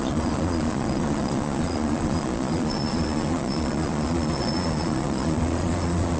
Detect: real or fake fake